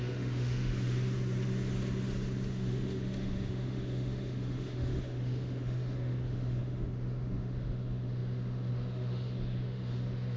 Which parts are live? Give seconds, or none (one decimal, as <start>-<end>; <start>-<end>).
0.7-2.5